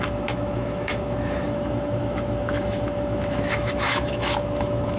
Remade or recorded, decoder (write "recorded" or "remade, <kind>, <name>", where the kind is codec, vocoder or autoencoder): remade, autoencoder, DAC-VAE